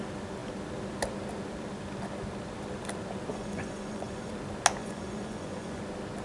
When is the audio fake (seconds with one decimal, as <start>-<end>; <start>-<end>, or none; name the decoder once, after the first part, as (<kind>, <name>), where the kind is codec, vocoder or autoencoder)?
3.3-4.3 (vocoder, Vocos); 4.8-5.8